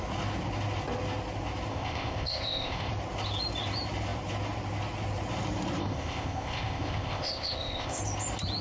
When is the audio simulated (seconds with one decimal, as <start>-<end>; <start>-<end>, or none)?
1.7-2.9; 5.8-8.0